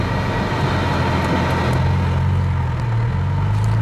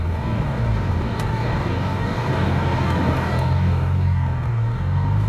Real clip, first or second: first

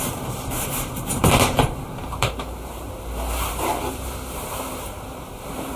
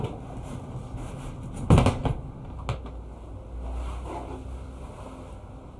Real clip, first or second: second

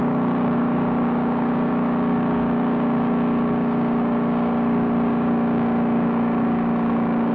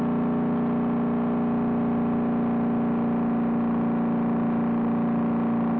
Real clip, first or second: second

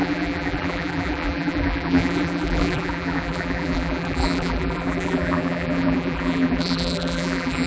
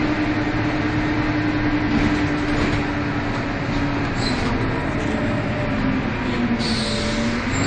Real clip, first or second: second